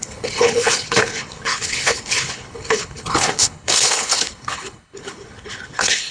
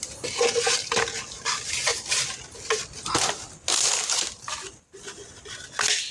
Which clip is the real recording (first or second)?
second